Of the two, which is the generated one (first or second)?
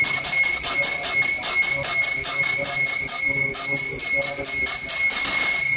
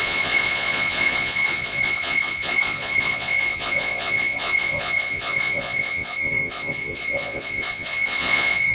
second